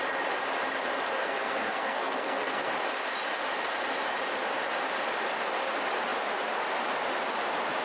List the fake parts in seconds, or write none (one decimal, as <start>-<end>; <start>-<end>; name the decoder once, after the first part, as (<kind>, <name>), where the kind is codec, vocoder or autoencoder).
1.2-2.7 (codec, SNAC)